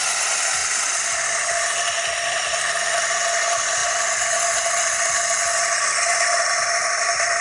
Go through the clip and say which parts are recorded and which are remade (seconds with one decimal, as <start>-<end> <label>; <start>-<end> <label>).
0.0-7.4 recorded